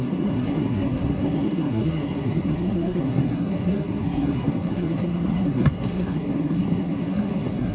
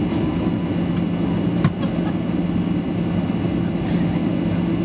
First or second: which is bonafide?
second